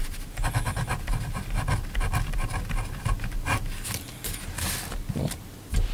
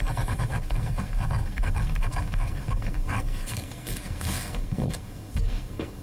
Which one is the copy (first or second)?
second